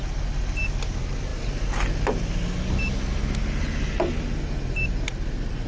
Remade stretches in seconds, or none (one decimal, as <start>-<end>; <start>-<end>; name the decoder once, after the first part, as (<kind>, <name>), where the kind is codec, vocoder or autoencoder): none

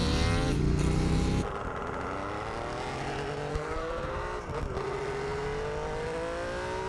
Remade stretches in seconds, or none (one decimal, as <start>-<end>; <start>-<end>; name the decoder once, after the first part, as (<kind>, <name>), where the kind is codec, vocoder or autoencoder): 3.5-4.1 (codec, SNAC)

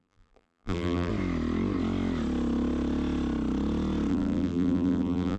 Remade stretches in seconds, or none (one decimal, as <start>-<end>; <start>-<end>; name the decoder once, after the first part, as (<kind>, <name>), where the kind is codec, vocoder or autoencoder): 0.0-1.1 (vocoder, BigVGAN v2); 4.1-5.4

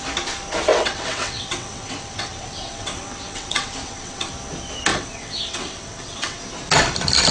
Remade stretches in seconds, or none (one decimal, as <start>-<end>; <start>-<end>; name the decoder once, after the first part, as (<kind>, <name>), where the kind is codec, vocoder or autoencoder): 0.7-4.3 (vocoder, WaveNeXt); 4.9-6.4

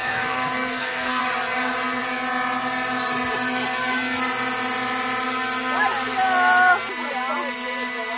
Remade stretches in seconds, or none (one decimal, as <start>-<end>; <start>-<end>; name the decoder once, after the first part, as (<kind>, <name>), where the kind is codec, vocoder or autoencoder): 0.0-1.2 (codec, SNAC)